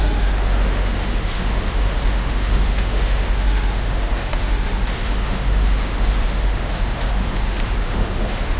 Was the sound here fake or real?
fake